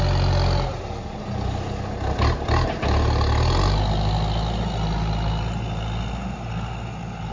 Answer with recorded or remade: recorded